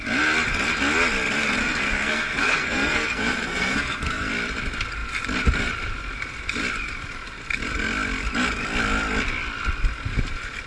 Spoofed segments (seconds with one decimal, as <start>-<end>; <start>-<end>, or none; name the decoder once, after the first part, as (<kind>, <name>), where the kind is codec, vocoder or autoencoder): 1.6-4.3 (codec, SNAC)